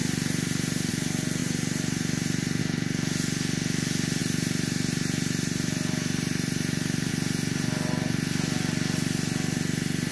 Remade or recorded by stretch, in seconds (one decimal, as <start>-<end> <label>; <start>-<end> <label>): 0.0-0.9 remade; 0.9-1.4 recorded; 1.4-2.6 remade; 2.6-4.2 recorded; 4.2-7.1 remade; 7.1-10.1 recorded